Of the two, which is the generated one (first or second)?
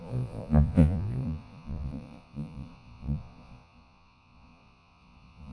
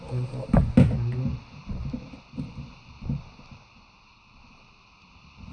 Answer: first